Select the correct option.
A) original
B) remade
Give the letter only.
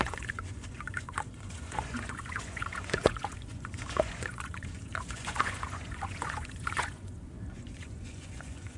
B